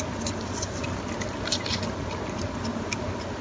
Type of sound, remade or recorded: recorded